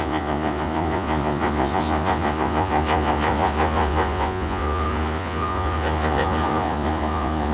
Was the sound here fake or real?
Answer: fake